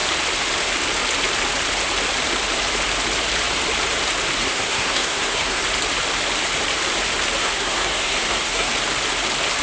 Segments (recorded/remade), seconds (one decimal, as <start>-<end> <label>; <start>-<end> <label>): 0.0-4.4 recorded; 4.4-5.6 remade; 5.6-7.4 recorded; 7.4-8.7 remade; 8.7-9.6 recorded